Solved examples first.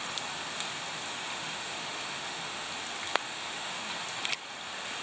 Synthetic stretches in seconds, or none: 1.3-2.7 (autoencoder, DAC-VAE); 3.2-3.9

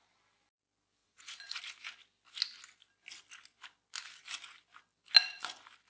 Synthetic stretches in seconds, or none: 1.0-1.6 (vocoder, Vocos)

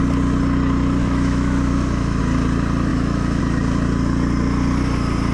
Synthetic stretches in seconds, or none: 1.0-2.2 (autoencoder, DAC-VAE); 2.9-3.4

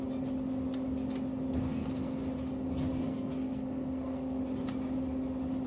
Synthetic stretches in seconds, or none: 1.6-2.2 (codec, SNAC); 2.9-4.4

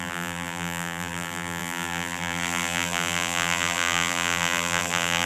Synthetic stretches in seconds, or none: 0.0-5.3 (vocoder, BigVGAN v2)

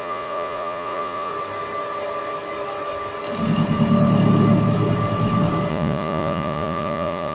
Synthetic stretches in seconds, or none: 0.0-1.3 (vocoder, Vocos); 5.7-7.3